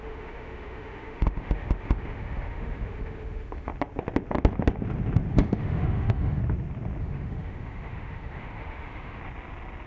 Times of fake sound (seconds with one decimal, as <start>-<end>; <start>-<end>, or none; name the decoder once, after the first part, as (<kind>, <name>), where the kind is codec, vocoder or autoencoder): 0.0-3.7 (autoencoder, DAC-VAE); 5.3-6.4; 7.0-9.2